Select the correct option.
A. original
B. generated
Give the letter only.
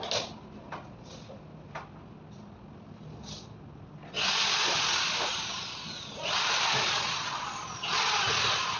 A